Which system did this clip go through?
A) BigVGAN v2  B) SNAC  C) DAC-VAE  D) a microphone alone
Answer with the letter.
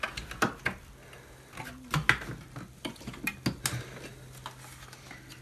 D